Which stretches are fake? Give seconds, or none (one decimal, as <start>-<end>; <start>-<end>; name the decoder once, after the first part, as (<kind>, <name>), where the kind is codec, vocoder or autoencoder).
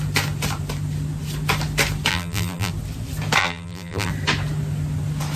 2.1-2.7 (vocoder, BigVGAN v2); 3.4-4.1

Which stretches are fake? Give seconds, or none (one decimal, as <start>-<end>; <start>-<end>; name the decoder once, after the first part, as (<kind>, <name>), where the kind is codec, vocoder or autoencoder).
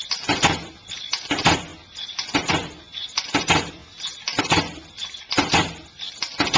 0.0-1.7 (vocoder, BigVGAN v2); 2.5-3.8; 4.4-6.6